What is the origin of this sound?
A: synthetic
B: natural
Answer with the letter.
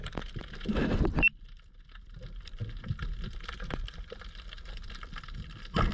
B